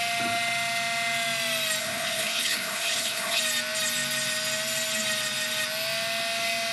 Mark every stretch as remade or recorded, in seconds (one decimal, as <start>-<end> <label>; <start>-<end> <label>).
0.0-1.8 recorded; 1.8-3.4 remade; 3.4-6.7 recorded